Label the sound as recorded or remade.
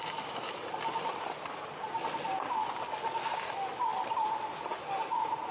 recorded